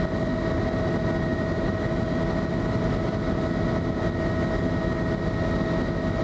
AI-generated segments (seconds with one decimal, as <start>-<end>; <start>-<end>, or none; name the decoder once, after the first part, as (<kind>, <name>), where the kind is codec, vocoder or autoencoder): none

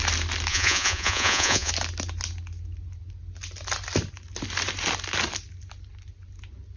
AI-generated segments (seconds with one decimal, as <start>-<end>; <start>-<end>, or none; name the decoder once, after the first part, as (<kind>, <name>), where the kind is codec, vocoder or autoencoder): 0.5-1.7 (vocoder, Vocos)

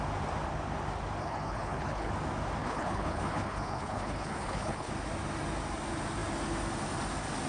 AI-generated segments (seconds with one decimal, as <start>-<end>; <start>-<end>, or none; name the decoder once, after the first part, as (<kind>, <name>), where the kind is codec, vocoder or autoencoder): 1.2-2.1 (codec, HILCodec); 2.6-4.9

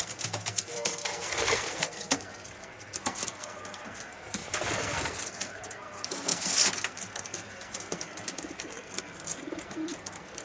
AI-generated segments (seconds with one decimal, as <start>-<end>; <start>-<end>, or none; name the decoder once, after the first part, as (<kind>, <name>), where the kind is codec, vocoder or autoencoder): 0.0-10.4 (codec, SNAC)

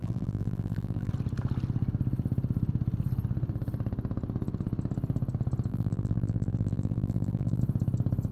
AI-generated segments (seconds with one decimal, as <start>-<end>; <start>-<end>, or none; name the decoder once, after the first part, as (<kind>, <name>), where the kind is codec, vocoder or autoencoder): 0.0-1.1 (vocoder, BigVGAN v2); 5.7-7.6

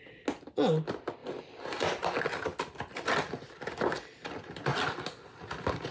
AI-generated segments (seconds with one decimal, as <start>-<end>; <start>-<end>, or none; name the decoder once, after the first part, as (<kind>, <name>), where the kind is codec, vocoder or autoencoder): none